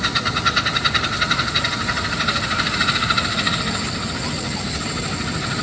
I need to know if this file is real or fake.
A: real